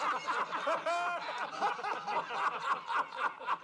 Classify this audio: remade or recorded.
recorded